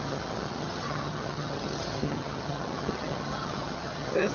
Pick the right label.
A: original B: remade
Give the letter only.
B